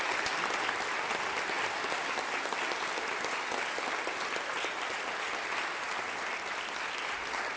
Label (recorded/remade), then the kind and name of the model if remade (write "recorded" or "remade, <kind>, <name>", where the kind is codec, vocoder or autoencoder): recorded